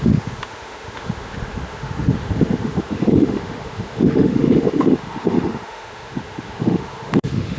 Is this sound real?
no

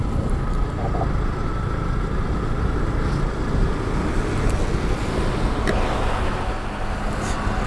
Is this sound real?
yes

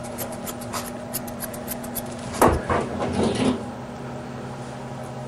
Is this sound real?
yes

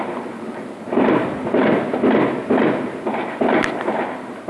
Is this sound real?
yes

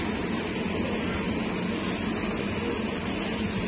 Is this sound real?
yes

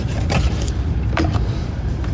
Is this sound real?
no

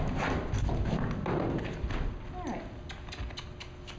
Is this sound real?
yes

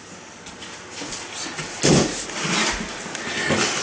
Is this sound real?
yes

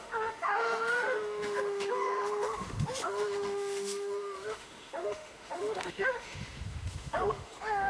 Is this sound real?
no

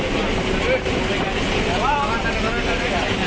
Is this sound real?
yes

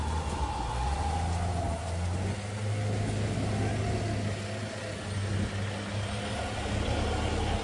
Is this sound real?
yes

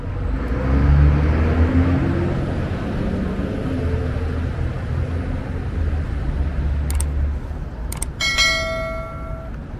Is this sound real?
yes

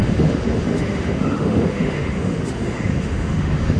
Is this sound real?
no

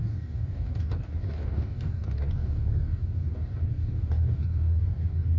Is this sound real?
no